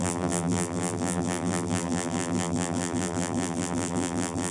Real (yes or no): no